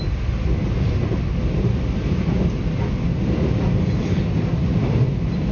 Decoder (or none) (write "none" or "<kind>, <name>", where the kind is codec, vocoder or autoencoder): none